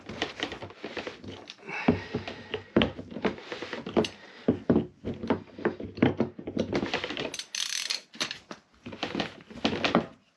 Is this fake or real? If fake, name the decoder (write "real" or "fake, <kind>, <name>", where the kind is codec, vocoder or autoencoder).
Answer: real